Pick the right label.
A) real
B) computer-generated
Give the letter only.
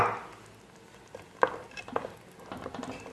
A